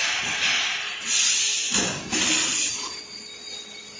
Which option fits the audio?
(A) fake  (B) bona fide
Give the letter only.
B